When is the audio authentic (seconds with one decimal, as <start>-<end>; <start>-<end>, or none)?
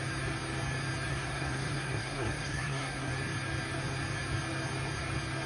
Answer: 0.0-1.1; 3.1-5.5